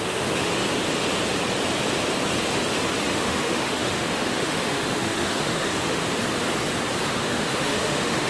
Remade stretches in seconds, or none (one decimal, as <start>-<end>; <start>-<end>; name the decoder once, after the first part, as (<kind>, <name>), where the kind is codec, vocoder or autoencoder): 0.0-0.5 (autoencoder, DAC-VAE); 3.1-6.0; 7.2-8.3